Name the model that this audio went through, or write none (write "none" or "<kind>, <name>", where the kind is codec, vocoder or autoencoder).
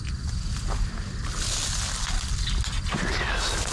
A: none